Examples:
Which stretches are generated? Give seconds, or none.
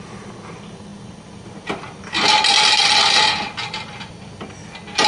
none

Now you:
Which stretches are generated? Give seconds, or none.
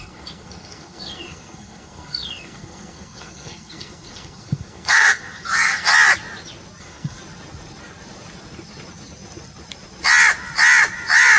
0.0-5.9 (codec, SNAC); 6.8-7.2